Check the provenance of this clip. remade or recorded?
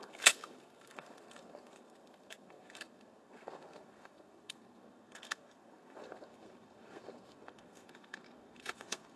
remade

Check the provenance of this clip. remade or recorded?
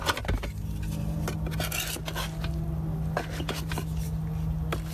recorded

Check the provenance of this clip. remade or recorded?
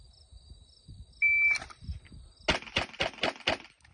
recorded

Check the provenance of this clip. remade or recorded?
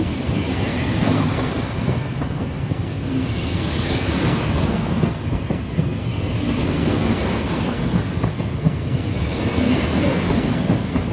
remade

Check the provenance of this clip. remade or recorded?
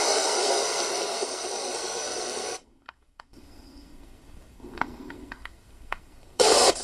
remade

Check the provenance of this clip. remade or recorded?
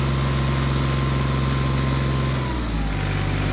recorded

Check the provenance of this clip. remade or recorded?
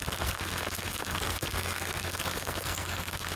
remade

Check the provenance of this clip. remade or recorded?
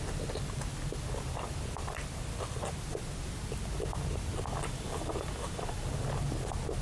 recorded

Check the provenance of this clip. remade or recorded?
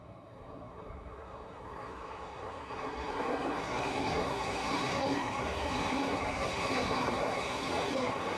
remade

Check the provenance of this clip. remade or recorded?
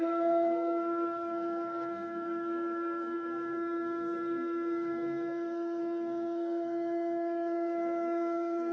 remade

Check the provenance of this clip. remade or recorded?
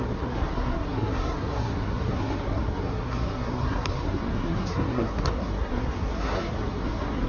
remade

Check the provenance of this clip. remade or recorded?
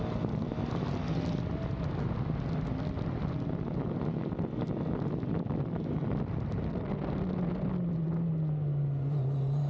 recorded